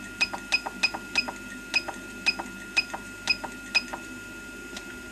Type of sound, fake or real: real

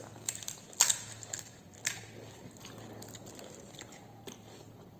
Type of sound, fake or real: real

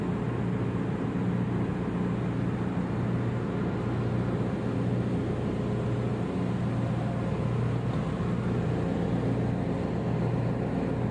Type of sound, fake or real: real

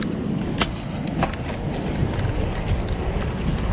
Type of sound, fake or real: real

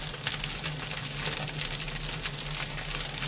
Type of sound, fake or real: real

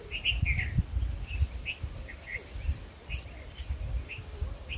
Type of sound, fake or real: fake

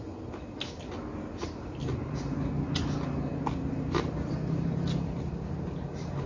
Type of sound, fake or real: real